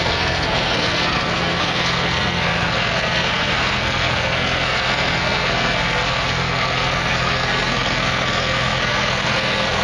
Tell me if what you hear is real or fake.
fake